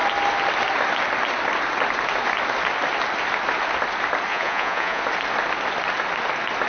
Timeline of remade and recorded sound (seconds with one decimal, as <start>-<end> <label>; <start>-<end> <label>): 0.0-4.3 recorded; 4.3-5.0 remade; 5.0-6.7 recorded

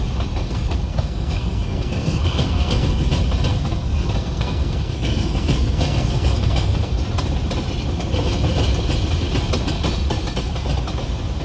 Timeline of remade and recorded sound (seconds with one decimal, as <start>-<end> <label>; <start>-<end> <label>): 0.0-0.4 recorded; 0.4-3.1 remade; 3.1-3.5 recorded; 3.5-7.0 remade; 7.0-11.4 recorded